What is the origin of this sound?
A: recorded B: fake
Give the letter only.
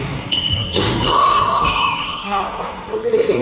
B